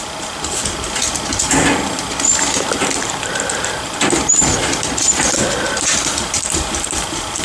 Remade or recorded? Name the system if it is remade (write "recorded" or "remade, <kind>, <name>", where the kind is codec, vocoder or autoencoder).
recorded